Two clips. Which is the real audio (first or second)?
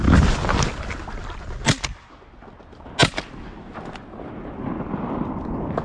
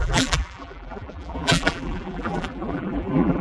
first